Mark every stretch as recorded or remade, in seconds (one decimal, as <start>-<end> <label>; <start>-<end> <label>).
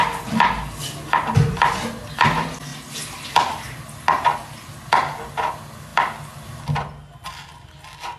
0.0-8.2 recorded